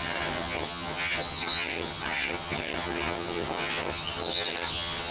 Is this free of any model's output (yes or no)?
no